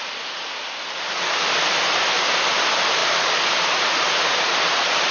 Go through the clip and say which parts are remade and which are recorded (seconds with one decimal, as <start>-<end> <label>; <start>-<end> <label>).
0.0-5.1 recorded